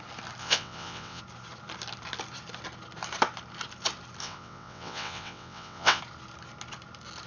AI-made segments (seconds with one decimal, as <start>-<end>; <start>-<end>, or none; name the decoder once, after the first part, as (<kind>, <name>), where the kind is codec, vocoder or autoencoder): 0.4-1.2 (vocoder, WaveNeXt); 4.2-6.0